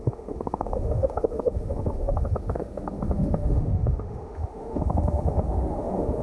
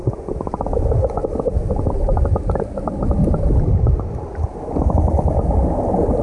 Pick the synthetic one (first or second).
first